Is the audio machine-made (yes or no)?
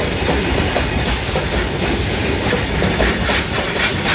no